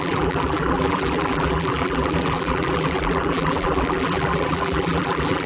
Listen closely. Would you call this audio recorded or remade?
remade